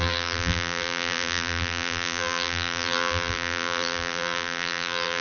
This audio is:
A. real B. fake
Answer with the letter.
B